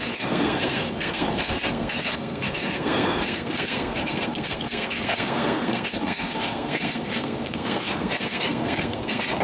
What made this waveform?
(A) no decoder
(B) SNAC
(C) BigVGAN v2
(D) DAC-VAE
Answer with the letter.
B